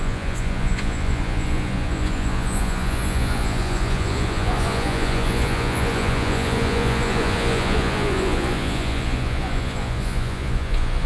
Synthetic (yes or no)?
yes